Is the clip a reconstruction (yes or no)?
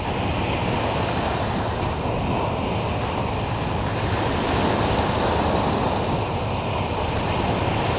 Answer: no